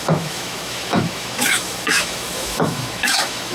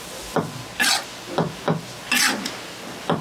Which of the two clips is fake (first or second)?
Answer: first